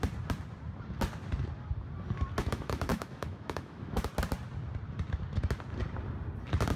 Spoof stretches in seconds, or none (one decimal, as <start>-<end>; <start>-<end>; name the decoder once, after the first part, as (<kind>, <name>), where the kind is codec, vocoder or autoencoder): 2.4-4.1 (autoencoder, DAC-VAE)